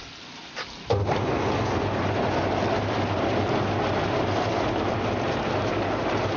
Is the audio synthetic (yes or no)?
no